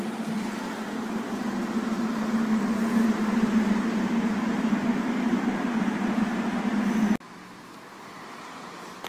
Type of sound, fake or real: real